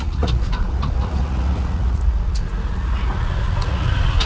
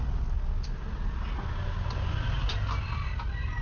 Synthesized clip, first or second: first